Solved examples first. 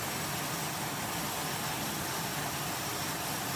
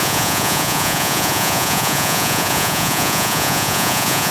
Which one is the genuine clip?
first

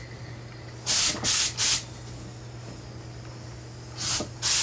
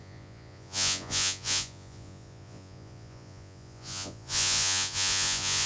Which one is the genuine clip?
first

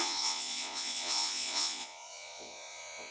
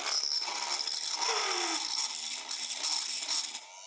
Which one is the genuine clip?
second